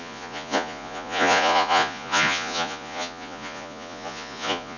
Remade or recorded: remade